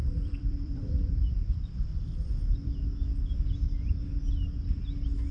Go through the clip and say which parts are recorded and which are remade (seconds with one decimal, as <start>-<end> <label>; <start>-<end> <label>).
0.0-1.9 remade; 1.9-5.3 recorded

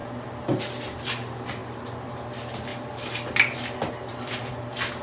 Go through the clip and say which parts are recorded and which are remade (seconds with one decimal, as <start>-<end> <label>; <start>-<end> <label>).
0.0-5.0 recorded

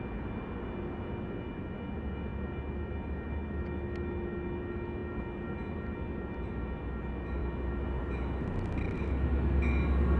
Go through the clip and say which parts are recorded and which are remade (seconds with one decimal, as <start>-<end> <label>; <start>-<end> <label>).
0.0-10.2 recorded

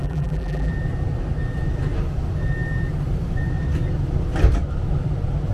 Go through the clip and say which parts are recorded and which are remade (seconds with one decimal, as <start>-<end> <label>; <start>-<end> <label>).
0.0-0.7 remade; 0.7-5.5 recorded

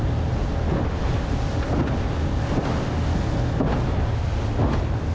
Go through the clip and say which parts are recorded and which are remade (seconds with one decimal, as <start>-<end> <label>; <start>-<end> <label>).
0.0-0.4 recorded; 0.4-2.6 remade; 2.6-5.1 recorded

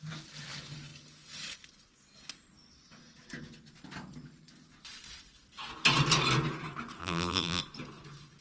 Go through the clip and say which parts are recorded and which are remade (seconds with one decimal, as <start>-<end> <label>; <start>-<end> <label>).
0.0-7.0 recorded; 7.0-7.6 remade; 7.6-8.4 recorded

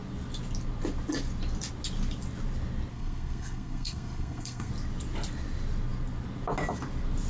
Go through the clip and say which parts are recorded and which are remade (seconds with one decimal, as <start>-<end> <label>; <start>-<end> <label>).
0.0-2.9 recorded; 2.9-4.7 remade; 4.7-7.3 recorded

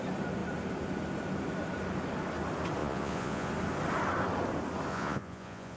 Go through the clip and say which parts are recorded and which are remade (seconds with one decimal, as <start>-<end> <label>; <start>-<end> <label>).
0.0-2.8 recorded; 2.8-3.5 remade; 3.5-4.9 recorded; 4.9-5.8 remade